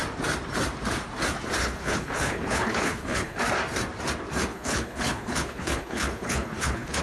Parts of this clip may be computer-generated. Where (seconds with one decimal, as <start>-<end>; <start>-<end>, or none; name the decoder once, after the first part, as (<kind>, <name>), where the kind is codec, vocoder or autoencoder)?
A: 1.6-3.4 (codec, HILCodec); 4.5-7.0